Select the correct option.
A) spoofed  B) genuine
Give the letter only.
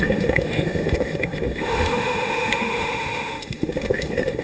A